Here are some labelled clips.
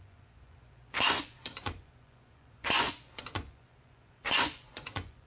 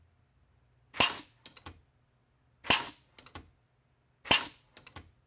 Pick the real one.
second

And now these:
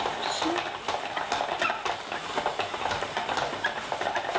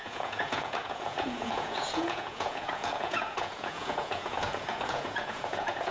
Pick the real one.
first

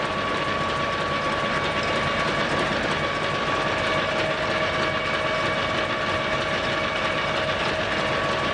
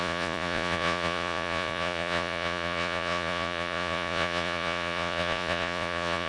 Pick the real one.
first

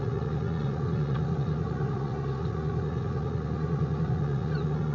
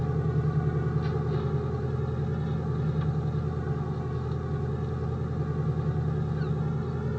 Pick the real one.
second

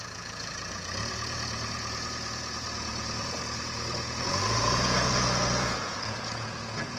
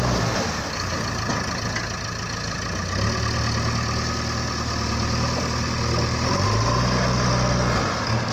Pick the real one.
second